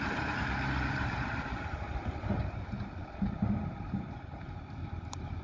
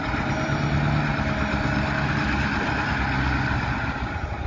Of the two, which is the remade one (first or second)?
first